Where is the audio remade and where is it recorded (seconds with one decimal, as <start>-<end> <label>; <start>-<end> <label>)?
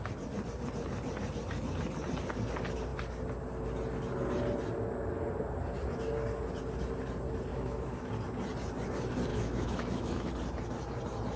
0.0-7.5 recorded; 7.5-8.1 remade; 8.1-9.3 recorded; 9.3-10.3 remade; 10.3-11.4 recorded